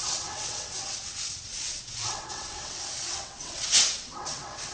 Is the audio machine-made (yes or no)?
yes